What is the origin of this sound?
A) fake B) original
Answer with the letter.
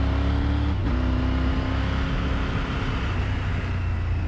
B